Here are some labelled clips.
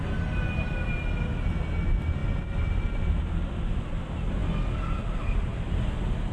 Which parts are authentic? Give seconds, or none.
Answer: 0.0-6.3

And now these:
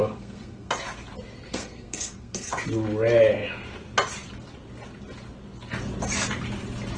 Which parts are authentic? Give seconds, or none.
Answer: 0.7-1.5; 2.5-7.0